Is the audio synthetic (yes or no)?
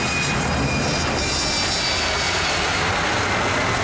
no